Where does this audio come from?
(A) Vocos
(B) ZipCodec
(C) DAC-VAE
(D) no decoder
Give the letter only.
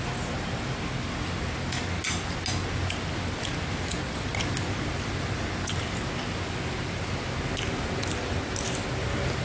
D